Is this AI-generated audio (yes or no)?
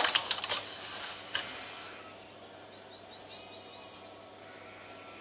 no